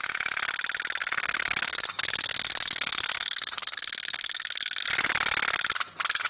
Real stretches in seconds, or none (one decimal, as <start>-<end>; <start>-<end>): 0.0-1.0; 4.8-6.3